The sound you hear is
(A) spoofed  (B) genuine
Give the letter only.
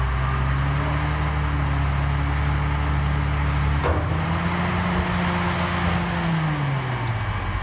B